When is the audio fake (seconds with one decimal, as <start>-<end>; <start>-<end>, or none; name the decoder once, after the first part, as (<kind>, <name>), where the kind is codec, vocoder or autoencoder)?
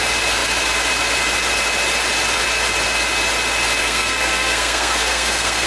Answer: 3.8-5.7 (codec, SNAC)